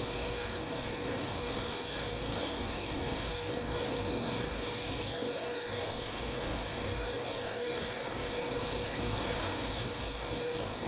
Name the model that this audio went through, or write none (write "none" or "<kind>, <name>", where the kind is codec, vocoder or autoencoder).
codec, DAC